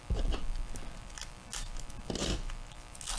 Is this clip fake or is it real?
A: real